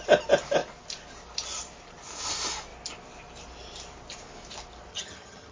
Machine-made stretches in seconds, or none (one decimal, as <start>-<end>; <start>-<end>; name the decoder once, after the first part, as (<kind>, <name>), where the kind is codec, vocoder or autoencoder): 4.9-5.5 (vocoder, HiFi-GAN)